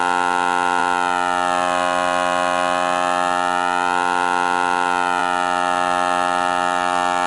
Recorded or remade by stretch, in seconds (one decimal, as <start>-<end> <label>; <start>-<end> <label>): 0.0-7.3 recorded

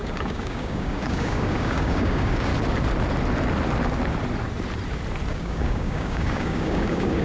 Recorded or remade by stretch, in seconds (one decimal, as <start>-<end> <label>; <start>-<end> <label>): 0.0-2.5 remade; 2.5-5.3 recorded; 5.3-7.2 remade

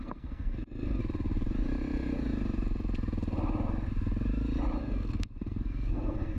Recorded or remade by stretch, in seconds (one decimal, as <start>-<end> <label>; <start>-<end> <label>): 0.0-1.0 remade; 1.0-4.8 recorded; 4.8-6.4 remade

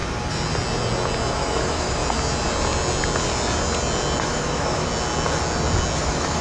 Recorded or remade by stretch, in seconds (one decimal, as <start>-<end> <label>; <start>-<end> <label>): 0.0-1.3 recorded; 1.3-2.0 remade; 2.0-4.2 recorded; 4.2-4.9 remade; 4.9-6.0 recorded; 6.0-6.4 remade

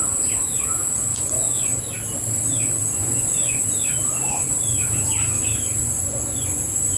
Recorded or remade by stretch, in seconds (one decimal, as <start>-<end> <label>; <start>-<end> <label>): 0.0-1.1 recorded; 1.1-1.8 remade; 1.8-3.0 recorded; 3.0-3.6 remade; 3.6-5.8 recorded; 5.8-6.6 remade; 6.6-7.0 recorded

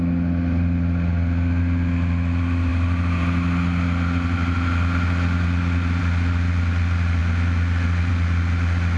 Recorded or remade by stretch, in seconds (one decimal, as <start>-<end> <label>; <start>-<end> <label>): 0.0-9.0 recorded

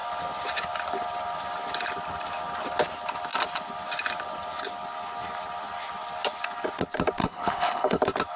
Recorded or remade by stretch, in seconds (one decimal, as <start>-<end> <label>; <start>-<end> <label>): 0.0-7.2 recorded; 7.2-8.0 remade; 8.0-8.4 recorded

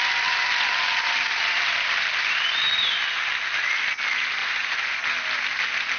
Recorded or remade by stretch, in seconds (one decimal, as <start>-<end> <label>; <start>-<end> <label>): 0.0-4.4 recorded; 4.4-5.0 remade; 5.0-6.0 recorded